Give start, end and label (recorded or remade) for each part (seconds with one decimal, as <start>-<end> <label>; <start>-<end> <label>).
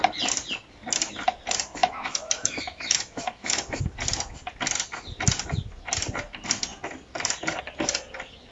0.0-1.8 recorded; 1.8-3.8 remade; 3.8-8.5 recorded